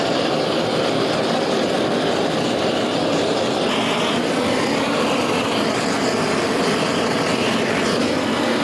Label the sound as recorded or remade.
recorded